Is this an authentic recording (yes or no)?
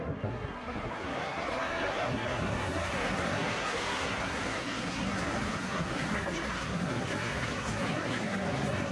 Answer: no